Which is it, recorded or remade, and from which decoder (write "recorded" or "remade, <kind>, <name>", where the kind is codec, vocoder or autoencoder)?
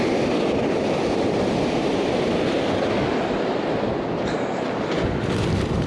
recorded